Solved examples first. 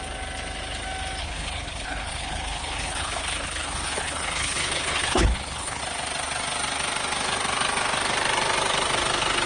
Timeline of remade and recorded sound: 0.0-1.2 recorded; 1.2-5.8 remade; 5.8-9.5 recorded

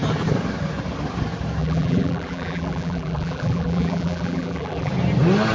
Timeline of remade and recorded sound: 0.0-1.6 recorded; 1.6-4.9 remade; 4.9-5.5 recorded

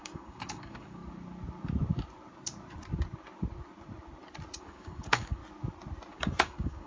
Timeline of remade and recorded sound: 0.0-1.0 remade; 1.0-4.6 recorded; 4.6-5.4 remade; 5.4-6.1 recorded; 6.1-6.9 remade

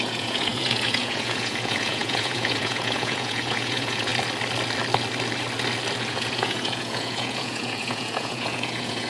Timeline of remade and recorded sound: 0.0-4.1 remade; 4.1-6.0 recorded; 6.0-9.1 remade

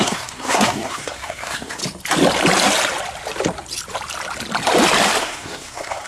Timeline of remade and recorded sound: 0.0-1.8 remade; 1.8-5.2 recorded; 5.2-6.1 remade

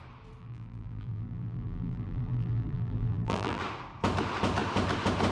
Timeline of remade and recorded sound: 0.0-0.4 recorded; 0.4-3.6 remade; 3.6-5.3 recorded

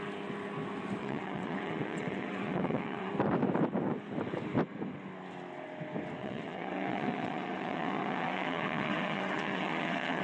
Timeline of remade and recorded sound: 0.0-1.0 recorded; 1.0-3.1 remade; 3.1-6.2 recorded; 6.2-10.2 remade